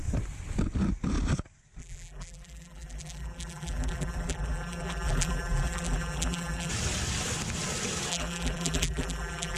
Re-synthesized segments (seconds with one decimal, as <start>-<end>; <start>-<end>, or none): 1.8-6.7; 8.1-9.6